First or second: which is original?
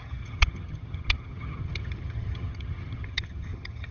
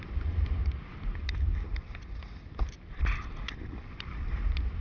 second